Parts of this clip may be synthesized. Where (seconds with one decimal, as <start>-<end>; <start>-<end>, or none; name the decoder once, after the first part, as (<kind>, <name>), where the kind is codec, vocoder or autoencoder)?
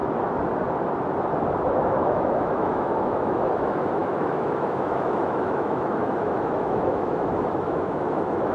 1.8-8.5 (autoencoder, DAC-VAE)